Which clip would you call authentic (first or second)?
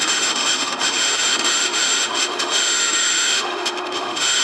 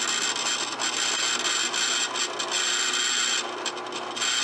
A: second